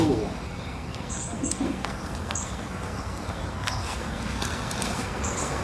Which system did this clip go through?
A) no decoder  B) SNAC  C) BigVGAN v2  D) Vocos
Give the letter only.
B